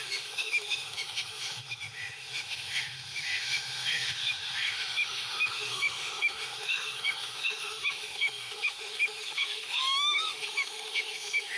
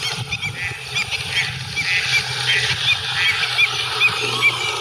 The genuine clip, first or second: second